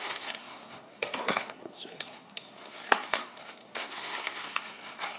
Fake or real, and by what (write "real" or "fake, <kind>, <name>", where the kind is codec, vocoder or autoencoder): fake, codec, SNAC